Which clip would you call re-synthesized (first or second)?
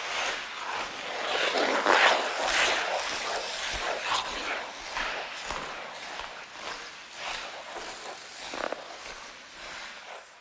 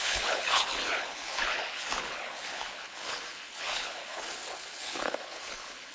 second